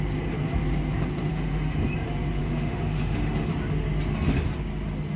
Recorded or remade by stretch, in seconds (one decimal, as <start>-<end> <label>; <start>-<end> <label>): 0.0-1.3 recorded; 1.3-1.8 remade; 1.8-2.4 recorded; 2.4-3.5 remade; 3.5-5.2 recorded